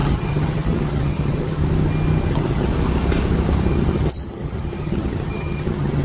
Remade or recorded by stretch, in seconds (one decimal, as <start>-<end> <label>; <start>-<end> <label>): 0.0-1.6 remade; 1.6-2.3 recorded; 2.3-2.7 remade; 2.7-3.7 recorded; 3.7-6.0 remade